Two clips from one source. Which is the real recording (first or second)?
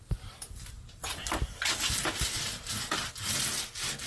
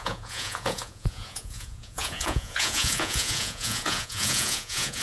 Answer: first